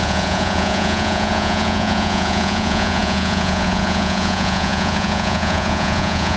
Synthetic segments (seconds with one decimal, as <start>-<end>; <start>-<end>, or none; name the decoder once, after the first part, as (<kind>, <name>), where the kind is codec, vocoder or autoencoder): 0.0-6.4 (vocoder, Vocos)